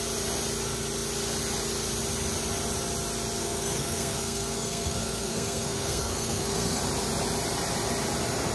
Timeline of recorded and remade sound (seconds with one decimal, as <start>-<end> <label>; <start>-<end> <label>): 0.0-3.4 recorded; 3.4-6.8 remade; 6.8-8.5 recorded